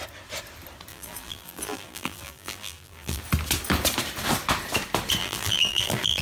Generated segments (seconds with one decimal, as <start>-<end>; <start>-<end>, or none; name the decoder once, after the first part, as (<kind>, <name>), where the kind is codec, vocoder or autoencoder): 0.9-3.2 (vocoder, BigVGAN v2); 5.2-6.2